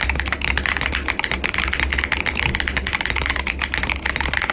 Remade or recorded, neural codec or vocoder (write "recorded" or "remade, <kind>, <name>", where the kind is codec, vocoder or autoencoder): recorded